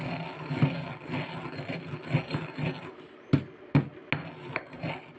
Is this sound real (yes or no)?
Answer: yes